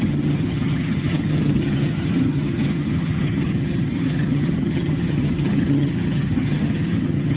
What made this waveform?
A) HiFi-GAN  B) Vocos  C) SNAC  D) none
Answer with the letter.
A